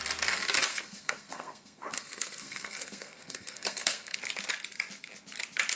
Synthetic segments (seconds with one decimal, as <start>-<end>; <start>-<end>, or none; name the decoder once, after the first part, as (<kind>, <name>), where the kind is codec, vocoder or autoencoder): 0.7-4.2 (codec, SNAC)